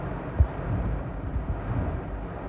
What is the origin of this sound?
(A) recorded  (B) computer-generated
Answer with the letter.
A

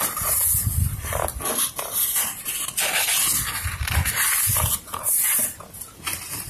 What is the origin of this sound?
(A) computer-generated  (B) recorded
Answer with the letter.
B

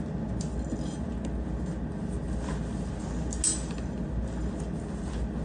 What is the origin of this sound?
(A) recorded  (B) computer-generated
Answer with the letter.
A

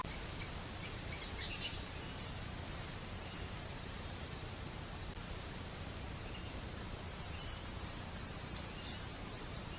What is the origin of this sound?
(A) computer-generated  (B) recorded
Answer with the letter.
A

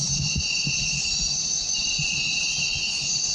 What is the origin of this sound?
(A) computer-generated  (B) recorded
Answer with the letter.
B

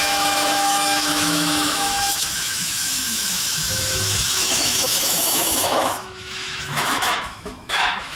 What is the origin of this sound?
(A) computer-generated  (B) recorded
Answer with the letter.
A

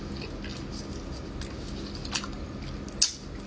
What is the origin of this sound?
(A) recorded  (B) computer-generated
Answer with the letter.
A